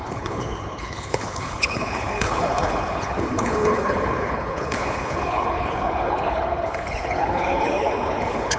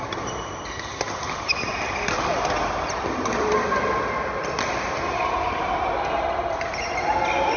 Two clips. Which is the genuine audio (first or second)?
second